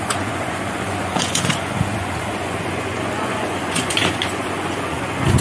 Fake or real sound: fake